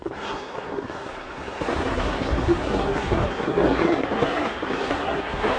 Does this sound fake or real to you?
fake